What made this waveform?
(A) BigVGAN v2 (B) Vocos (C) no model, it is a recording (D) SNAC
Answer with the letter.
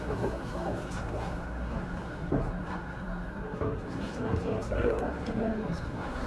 D